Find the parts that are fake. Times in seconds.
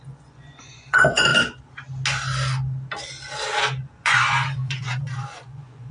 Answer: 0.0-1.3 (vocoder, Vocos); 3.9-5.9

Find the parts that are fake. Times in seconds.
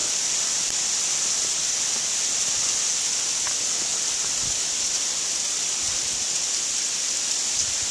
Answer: 0.0-0.7 (vocoder, BigVGAN v2); 3.9-6.1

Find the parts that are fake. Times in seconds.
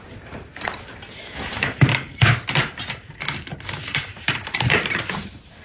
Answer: 0.0-5.6 (vocoder, BigVGAN v2)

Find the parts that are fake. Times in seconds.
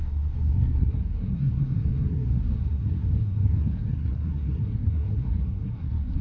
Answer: 0.0-6.2 (codec, SNAC)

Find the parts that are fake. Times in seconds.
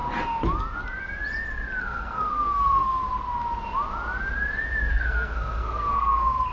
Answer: 1.8-3.0 (codec, SNAC); 4.9-6.5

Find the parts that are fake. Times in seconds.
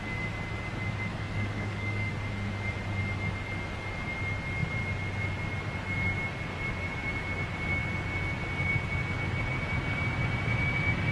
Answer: 1.1-2.1 (codec, DAC)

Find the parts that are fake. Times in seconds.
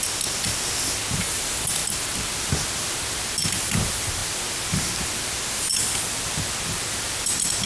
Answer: none